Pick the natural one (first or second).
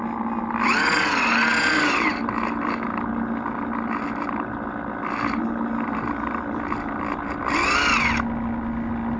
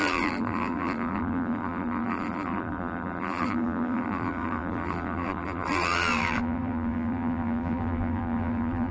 first